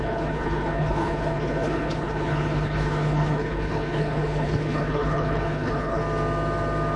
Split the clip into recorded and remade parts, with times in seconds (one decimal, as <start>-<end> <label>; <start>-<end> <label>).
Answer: 0.0-6.0 remade; 6.0-7.0 recorded